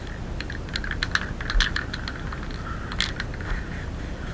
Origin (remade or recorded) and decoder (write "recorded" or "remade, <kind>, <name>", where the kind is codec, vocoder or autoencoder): recorded